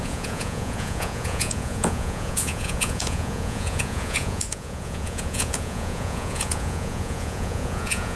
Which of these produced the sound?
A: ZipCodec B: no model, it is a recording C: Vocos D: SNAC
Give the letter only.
C